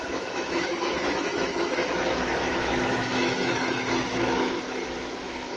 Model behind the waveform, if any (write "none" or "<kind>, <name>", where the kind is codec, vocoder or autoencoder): autoencoder, DAC-VAE